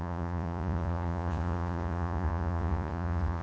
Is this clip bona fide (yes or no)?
no